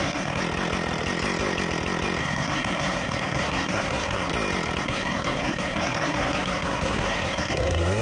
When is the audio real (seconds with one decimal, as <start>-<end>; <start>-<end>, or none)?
0.4-2.2; 4.3-4.8